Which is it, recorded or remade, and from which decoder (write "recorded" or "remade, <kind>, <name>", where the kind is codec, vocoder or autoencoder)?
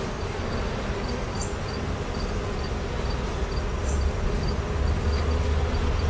recorded